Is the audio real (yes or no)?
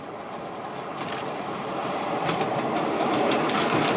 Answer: yes